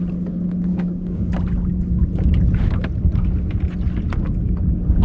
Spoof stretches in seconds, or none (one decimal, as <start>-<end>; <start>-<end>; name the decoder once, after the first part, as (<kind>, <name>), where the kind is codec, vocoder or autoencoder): 0.7-1.3 (codec, DAC)